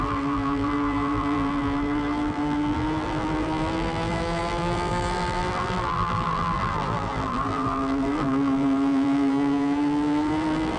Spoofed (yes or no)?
yes